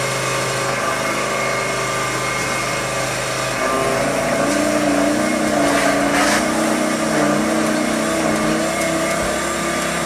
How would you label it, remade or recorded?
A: recorded